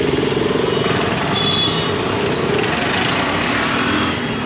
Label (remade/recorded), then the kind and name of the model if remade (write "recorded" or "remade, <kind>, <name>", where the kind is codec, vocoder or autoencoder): recorded